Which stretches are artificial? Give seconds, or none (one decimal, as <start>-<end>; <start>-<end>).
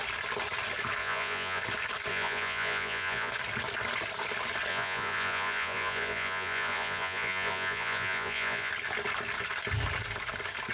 1.0-1.6; 2.1-3.3; 4.7-8.7